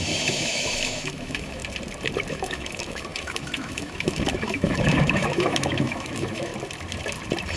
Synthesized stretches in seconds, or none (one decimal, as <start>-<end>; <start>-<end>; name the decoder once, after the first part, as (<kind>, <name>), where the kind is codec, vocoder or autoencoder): 0.0-1.6 (autoencoder, DAC-VAE); 2.3-6.5